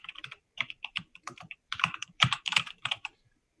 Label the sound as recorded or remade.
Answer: remade